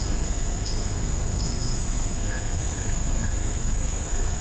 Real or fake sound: fake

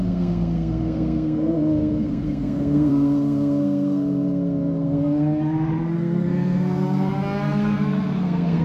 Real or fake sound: fake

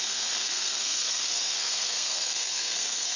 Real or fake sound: fake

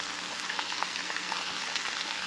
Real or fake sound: fake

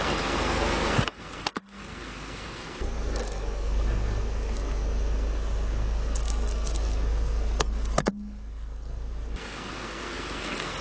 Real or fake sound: fake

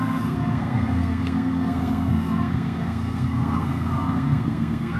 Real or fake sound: fake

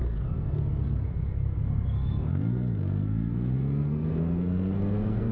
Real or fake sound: fake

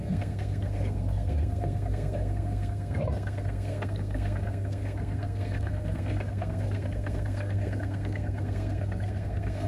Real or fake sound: fake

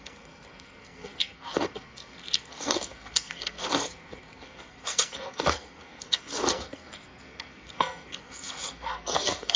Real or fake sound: fake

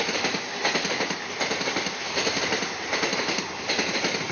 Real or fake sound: real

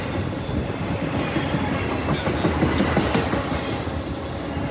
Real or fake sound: real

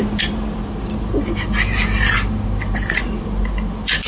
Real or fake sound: real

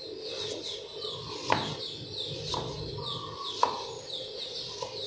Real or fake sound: real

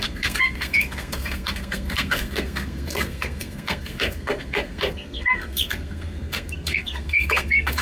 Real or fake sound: fake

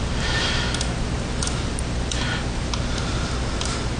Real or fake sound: real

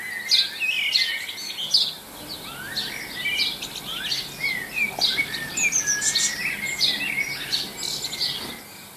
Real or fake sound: real